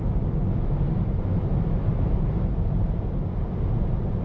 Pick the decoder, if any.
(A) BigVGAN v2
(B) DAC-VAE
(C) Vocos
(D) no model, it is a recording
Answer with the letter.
D